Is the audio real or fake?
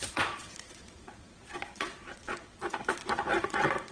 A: fake